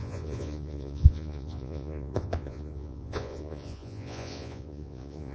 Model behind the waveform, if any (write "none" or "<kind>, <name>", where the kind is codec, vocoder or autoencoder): vocoder, Vocos